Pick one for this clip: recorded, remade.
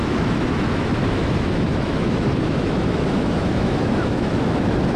remade